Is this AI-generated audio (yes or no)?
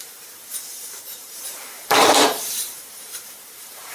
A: yes